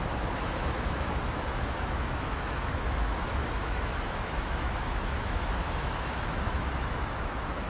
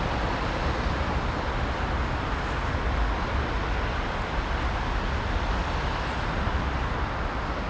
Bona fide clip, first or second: second